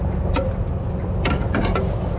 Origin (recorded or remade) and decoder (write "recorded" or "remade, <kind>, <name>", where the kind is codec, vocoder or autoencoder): recorded